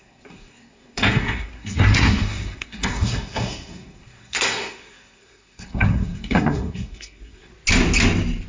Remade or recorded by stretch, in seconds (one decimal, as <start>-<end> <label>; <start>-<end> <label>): 0.0-7.5 remade; 7.5-8.5 recorded

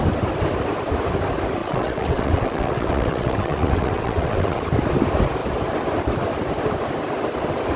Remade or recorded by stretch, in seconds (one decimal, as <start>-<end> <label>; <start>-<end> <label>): 0.0-1.6 recorded; 1.6-4.6 remade; 4.6-7.8 recorded

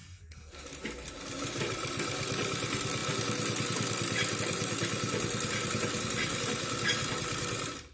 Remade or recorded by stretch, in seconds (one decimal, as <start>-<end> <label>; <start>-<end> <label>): 0.0-0.6 remade; 0.6-7.9 recorded

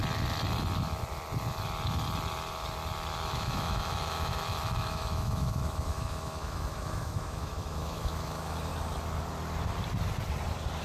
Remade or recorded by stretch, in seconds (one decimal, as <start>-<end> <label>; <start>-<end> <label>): 0.0-3.3 recorded; 3.3-8.7 remade; 8.7-10.8 recorded

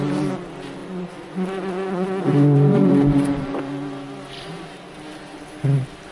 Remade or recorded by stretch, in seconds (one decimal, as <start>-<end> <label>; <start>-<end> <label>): 0.0-0.8 recorded; 0.8-3.4 remade; 3.4-6.1 recorded

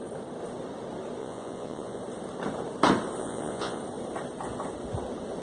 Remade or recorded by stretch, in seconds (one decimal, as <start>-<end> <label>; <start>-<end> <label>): 0.0-1.2 recorded; 1.2-2.0 remade; 2.0-3.2 recorded; 3.2-3.8 remade; 3.8-5.4 recorded

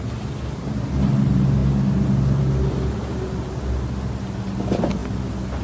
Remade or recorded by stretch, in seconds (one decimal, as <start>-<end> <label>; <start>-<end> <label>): 0.0-5.6 recorded